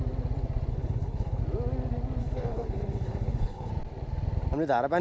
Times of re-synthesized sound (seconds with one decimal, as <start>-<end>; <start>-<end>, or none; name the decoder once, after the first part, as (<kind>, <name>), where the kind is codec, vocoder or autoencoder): 0.7-1.4 (codec, HILCodec); 2.2-3.7